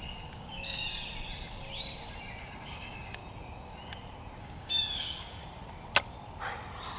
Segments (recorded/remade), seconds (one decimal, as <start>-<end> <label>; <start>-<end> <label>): 0.0-0.9 remade; 0.9-2.4 recorded; 2.4-3.2 remade; 3.2-4.4 recorded; 4.4-5.4 remade; 5.4-7.0 recorded